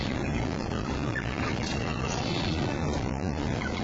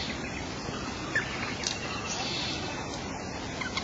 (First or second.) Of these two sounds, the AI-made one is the first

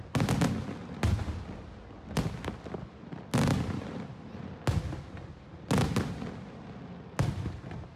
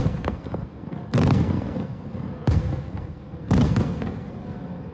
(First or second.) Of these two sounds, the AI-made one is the second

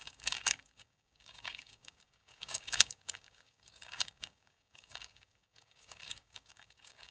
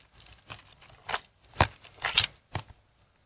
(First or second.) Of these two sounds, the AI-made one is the first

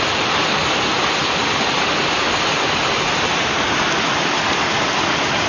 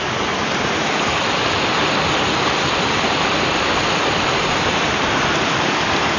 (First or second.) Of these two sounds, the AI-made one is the second